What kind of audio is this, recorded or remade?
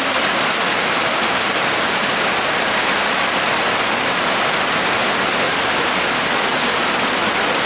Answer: recorded